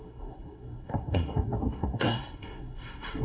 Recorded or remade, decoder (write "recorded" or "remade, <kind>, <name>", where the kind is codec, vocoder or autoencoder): remade, codec, SNAC